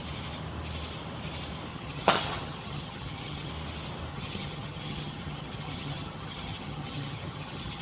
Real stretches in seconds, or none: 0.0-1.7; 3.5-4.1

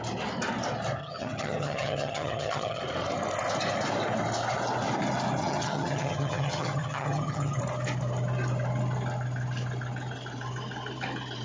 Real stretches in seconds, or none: 0.0-1.0; 2.8-5.4; 7.6-11.4

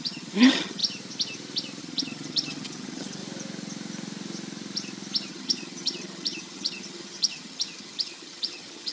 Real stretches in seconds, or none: 0.8-1.8; 3.2-5.3

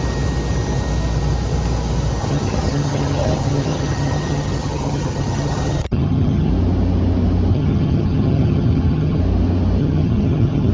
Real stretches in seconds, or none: 0.0-2.2; 6.5-7.5; 9.2-9.8

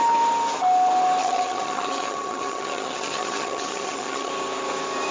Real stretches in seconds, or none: 0.0-1.2; 4.3-5.1

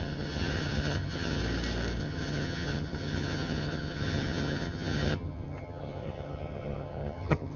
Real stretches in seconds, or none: 1.4-2.0

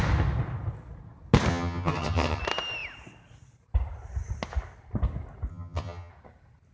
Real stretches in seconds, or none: 0.0-1.5; 2.4-5.5; 6.1-6.7

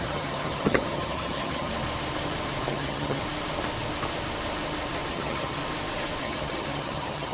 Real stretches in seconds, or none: 1.7-2.7; 3.2-5.1; 5.6-6.2